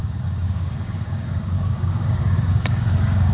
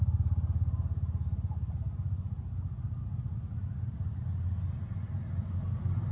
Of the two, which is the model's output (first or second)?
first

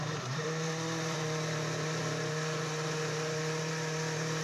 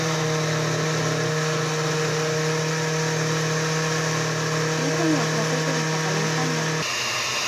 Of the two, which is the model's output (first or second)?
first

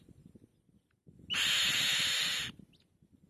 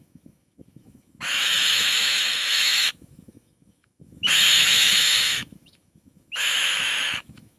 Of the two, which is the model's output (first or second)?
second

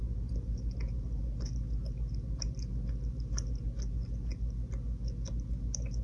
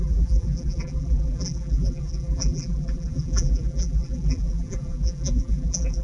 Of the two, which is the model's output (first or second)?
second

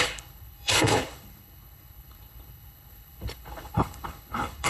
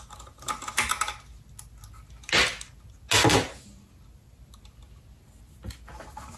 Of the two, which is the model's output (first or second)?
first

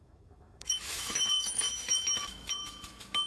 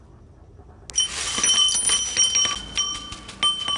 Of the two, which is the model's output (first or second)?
first